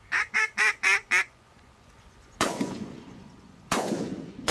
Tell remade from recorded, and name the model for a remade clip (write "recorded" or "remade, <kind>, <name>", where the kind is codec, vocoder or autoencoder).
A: remade, vocoder, Vocos